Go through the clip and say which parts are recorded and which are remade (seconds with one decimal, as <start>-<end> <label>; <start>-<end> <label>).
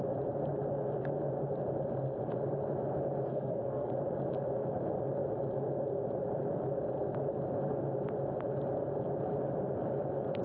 0.0-3.3 recorded; 3.3-3.9 remade; 3.9-10.4 recorded